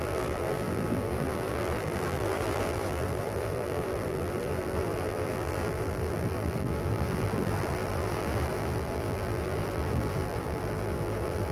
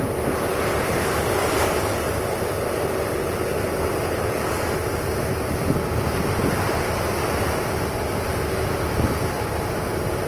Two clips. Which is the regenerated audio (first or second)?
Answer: first